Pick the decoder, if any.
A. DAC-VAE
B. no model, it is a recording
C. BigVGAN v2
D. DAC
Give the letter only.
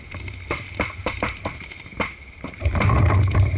B